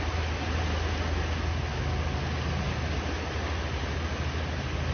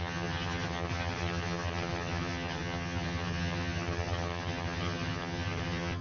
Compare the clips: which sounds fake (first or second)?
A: second